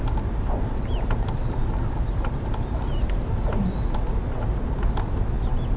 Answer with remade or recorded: recorded